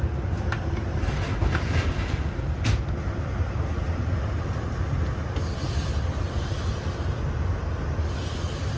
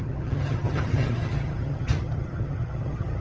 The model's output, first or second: second